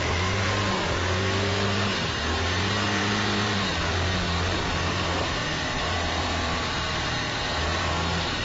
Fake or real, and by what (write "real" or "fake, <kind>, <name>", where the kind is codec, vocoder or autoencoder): fake, vocoder, BigVGAN v2